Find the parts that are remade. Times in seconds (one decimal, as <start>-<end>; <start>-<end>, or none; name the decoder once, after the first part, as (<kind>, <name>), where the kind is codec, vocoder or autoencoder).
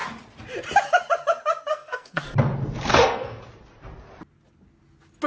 1.7-2.2 (codec, SNAC); 2.9-3.4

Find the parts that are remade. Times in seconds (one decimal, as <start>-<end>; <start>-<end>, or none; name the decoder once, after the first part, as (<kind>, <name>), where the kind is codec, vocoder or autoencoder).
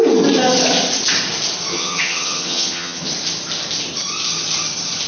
1.7-3.1 (vocoder, HiFi-GAN)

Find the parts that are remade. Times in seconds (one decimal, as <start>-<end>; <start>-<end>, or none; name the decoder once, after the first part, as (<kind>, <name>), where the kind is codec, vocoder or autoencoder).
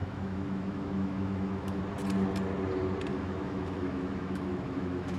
0.0-1.8 (autoencoder, DAC-VAE); 3.1-5.2